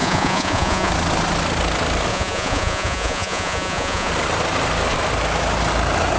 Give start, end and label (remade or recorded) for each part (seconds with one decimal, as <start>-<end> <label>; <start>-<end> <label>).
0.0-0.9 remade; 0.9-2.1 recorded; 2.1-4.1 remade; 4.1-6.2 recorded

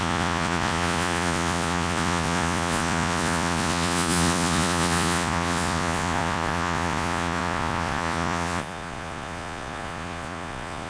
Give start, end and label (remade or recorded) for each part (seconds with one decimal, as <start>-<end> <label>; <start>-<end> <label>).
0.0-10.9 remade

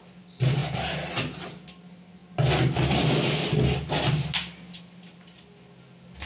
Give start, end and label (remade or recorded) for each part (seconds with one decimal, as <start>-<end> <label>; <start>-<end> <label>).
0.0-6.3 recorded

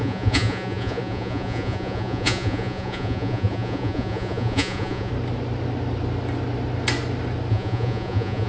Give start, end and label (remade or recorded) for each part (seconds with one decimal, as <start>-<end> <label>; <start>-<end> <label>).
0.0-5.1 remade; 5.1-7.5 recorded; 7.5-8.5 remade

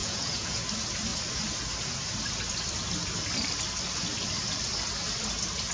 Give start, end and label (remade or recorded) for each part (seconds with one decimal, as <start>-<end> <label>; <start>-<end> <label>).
0.0-0.6 remade; 0.6-5.7 recorded